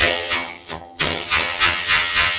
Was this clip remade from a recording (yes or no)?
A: yes